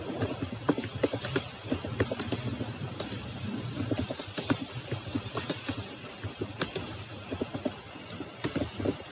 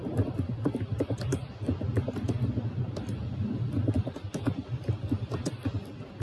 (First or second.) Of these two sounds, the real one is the second